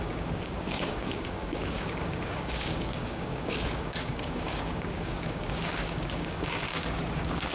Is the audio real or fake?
fake